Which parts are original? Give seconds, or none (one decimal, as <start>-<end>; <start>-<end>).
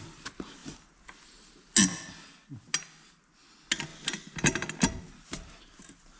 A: 0.0-6.2